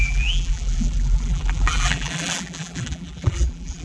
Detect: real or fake fake